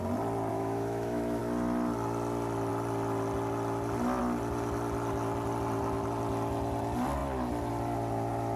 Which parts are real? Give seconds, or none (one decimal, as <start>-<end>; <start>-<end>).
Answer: 0.0-0.5; 1.4-8.6